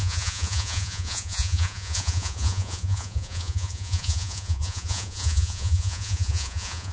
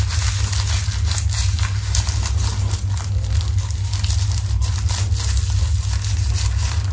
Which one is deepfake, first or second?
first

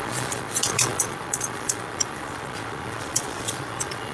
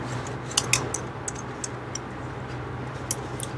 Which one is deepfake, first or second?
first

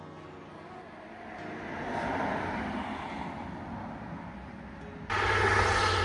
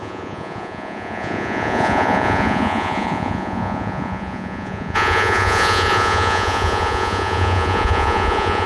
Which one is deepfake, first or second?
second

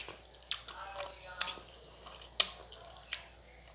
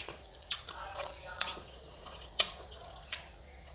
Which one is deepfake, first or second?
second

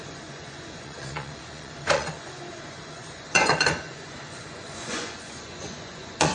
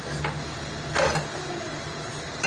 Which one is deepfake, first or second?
first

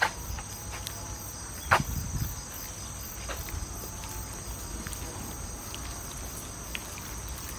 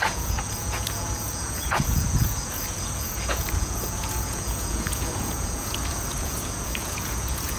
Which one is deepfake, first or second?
second